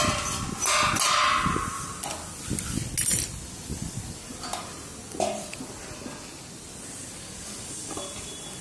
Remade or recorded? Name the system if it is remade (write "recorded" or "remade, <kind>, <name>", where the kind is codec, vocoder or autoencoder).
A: recorded